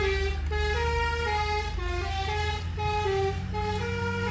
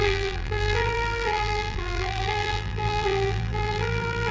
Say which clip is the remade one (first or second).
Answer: second